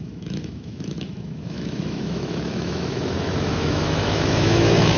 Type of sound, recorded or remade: remade